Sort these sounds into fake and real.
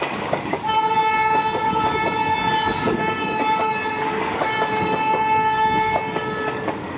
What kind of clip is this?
fake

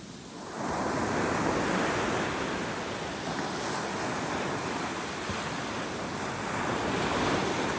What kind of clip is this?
real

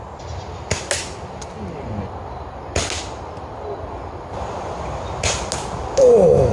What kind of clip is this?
real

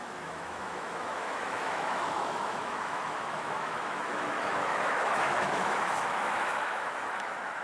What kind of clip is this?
fake